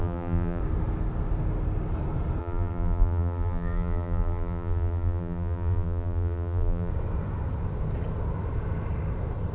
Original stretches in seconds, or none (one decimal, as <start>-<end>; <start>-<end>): 0.6-2.4; 6.9-9.5